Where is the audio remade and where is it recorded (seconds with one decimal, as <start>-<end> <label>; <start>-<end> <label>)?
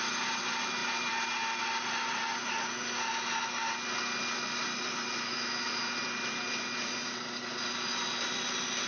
0.0-8.9 recorded